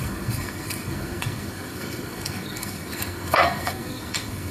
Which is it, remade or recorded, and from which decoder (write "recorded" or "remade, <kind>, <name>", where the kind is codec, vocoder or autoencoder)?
remade, codec, SNAC